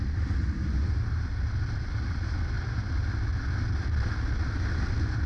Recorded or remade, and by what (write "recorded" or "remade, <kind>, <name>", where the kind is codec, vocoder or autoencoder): recorded